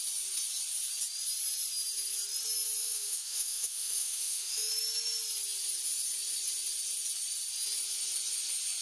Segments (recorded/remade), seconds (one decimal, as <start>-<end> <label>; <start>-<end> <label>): 0.0-2.8 recorded; 2.8-4.7 remade; 4.7-8.8 recorded